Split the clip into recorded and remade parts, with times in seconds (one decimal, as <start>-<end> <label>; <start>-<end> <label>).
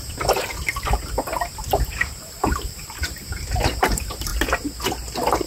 0.0-4.3 remade; 4.3-5.5 recorded